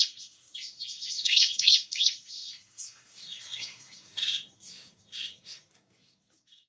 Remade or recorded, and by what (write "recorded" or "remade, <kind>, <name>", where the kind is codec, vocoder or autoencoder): remade, codec, SNAC